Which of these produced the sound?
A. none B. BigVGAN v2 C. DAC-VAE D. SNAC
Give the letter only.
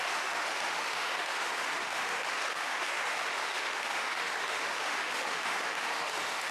C